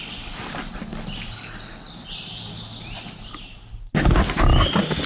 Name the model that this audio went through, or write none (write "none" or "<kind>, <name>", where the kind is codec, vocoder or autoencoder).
none